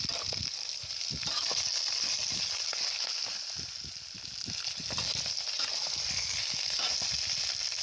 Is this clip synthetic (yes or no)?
no